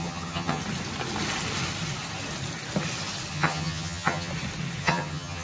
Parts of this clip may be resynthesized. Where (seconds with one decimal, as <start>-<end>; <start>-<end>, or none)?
0.0-0.6; 3.3-4.3; 4.8-5.4

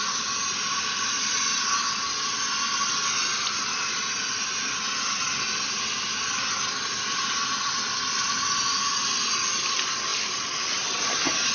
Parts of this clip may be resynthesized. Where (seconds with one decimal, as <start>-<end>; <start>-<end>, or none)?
none

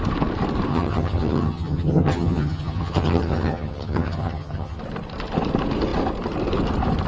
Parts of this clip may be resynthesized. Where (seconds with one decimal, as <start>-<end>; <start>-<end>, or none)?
0.7-4.8